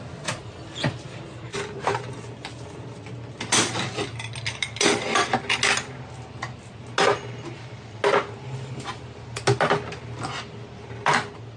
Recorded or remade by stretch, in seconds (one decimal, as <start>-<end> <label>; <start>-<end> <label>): 0.0-1.5 recorded; 1.5-2.1 remade; 2.1-11.6 recorded